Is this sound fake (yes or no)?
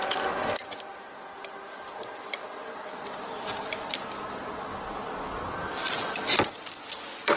no